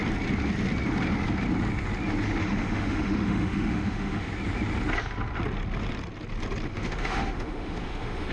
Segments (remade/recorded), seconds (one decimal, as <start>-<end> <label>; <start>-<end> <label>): 0.0-2.4 recorded; 2.4-4.3 remade; 4.3-6.7 recorded; 6.7-8.3 remade